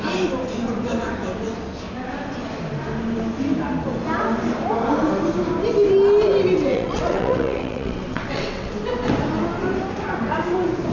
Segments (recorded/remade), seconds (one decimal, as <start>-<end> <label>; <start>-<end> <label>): 0.0-6.7 recorded; 6.7-8.7 remade; 8.7-10.9 recorded